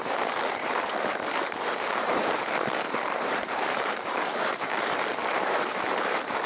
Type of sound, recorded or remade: remade